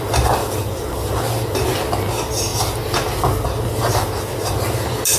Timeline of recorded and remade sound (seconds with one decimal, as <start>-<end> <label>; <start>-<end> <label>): 0.0-0.4 recorded; 0.4-0.9 remade; 0.9-5.2 recorded

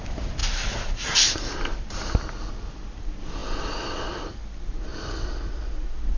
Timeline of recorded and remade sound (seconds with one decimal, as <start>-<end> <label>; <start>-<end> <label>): 0.0-6.2 recorded

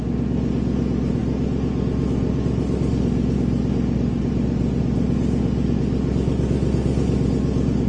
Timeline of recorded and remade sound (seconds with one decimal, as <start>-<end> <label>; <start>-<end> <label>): 0.0-7.9 recorded